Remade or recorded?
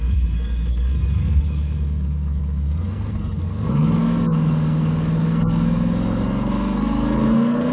remade